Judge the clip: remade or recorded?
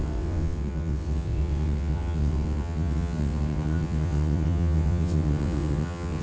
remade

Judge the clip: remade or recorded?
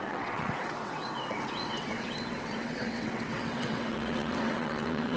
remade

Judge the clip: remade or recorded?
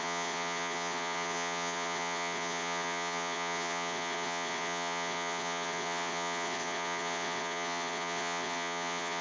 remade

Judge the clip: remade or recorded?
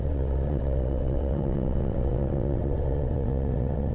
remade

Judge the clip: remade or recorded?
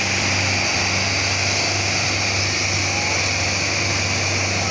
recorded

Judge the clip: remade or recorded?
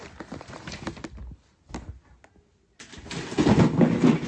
recorded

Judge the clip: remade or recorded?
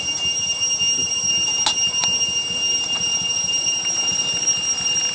recorded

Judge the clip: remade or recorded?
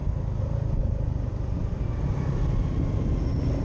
recorded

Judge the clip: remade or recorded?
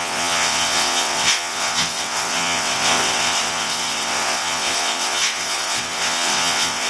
remade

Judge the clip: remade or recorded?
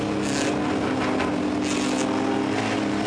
recorded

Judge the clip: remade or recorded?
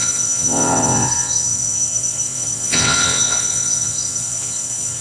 remade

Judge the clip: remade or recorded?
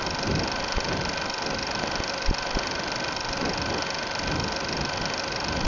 recorded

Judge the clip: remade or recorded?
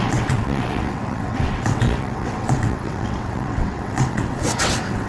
remade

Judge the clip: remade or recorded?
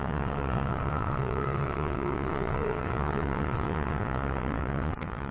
remade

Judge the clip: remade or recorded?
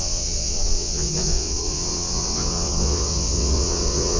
remade